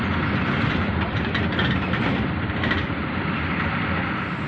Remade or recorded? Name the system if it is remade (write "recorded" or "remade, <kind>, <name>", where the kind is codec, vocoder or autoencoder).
remade, vocoder, BigVGAN v2